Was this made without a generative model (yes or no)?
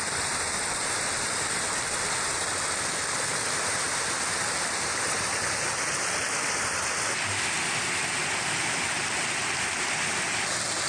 yes